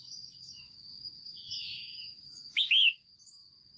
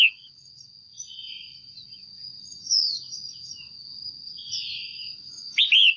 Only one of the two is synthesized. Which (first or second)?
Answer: first